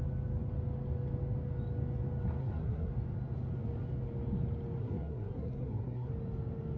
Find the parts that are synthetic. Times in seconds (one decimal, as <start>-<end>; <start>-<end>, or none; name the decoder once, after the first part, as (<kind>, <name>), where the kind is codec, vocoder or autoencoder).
2.4-2.9 (codec, SNAC); 4.8-6.1